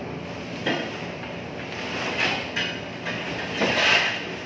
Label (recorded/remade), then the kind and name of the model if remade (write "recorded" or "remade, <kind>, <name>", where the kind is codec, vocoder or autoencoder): recorded